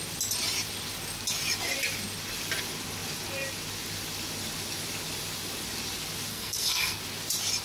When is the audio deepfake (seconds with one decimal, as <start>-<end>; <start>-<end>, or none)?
6.3-7.0